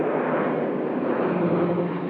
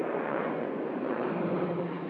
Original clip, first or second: first